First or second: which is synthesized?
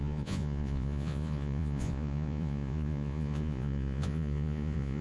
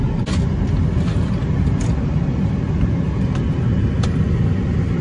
first